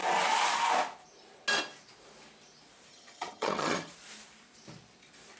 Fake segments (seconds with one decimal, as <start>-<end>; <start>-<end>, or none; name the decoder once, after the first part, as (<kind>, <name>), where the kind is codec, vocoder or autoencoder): 2.9-3.9 (vocoder, HiFi-GAN)